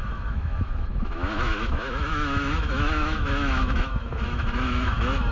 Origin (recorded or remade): remade